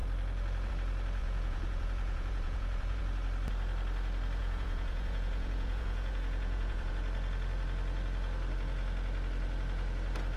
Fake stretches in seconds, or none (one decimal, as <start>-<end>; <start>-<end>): 1.2-3.0; 4.4-6.9